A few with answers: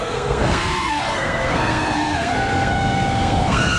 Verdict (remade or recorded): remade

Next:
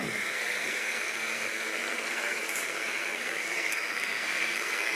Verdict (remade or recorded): remade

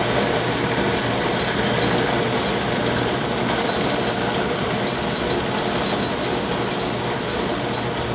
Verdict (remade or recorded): recorded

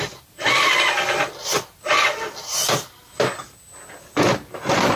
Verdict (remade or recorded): recorded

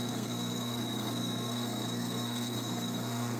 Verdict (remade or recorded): remade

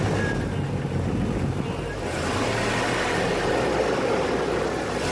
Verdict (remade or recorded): recorded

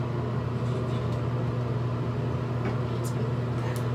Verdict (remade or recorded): recorded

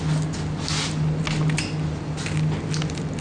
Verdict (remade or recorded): recorded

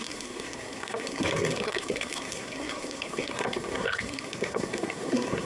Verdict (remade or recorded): remade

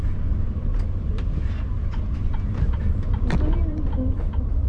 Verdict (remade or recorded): recorded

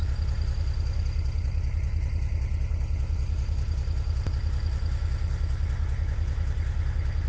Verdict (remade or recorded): recorded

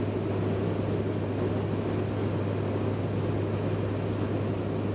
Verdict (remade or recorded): recorded